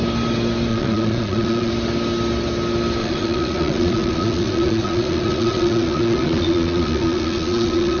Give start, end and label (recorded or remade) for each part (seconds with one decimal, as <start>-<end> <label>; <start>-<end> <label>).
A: 0.0-0.7 recorded; 0.7-1.7 remade; 1.7-3.0 recorded; 3.0-8.0 remade